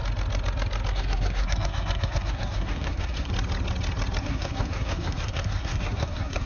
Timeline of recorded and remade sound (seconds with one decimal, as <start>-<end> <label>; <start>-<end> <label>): 0.0-0.9 recorded; 0.9-3.3 remade; 3.3-4.2 recorded; 4.2-6.5 remade